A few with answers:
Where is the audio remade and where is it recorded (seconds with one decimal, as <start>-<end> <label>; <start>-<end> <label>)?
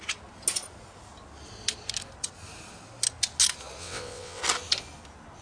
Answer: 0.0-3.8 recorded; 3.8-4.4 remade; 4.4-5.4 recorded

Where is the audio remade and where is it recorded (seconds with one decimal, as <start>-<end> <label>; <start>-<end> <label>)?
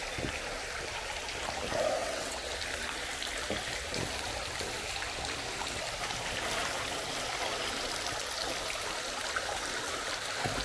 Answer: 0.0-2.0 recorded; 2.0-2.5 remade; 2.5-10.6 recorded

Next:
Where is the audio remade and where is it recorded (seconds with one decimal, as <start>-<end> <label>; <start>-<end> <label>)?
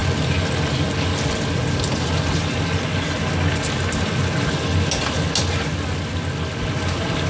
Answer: 0.0-7.3 recorded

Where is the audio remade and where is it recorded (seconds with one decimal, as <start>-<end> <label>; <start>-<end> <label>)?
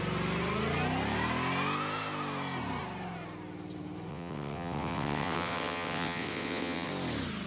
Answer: 0.0-4.1 recorded; 4.1-6.9 remade; 6.9-7.5 recorded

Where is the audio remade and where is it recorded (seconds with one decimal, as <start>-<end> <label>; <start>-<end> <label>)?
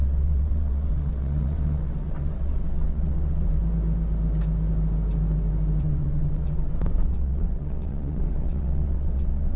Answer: 0.0-3.6 remade; 3.6-5.8 recorded; 5.8-9.6 remade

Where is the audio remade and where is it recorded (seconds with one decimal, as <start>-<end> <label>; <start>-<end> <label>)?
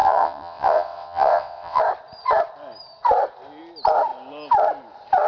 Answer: 0.0-1.8 remade; 1.8-5.3 recorded